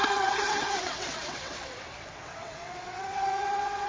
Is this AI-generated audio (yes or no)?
yes